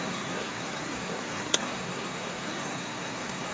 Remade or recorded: remade